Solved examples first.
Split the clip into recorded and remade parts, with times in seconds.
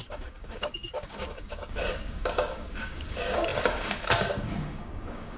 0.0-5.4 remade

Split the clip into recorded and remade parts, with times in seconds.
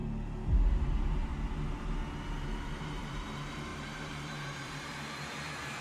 0.0-0.8 recorded; 0.8-1.3 remade; 1.3-2.7 recorded; 2.7-5.8 remade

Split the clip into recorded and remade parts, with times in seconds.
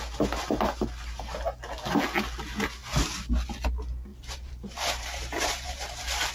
0.0-4.1 recorded; 4.1-6.3 remade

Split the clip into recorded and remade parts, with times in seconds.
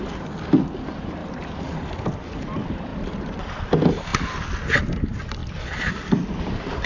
0.0-1.2 recorded; 1.2-2.2 remade; 2.2-2.9 recorded; 2.9-3.6 remade; 3.6-5.4 recorded; 5.4-6.1 remade; 6.1-6.9 recorded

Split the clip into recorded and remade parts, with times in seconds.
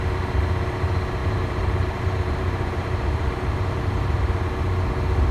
0.0-1.2 recorded; 1.2-4.4 remade; 4.4-5.3 recorded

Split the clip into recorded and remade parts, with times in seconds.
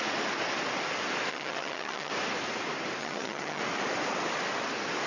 0.0-1.3 recorded; 1.3-2.1 remade; 2.1-3.0 recorded; 3.0-3.6 remade; 3.6-5.1 recorded